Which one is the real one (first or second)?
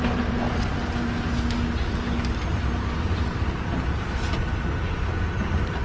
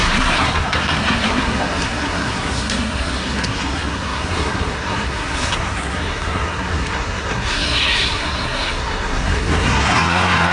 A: first